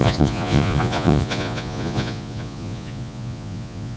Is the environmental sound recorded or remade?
remade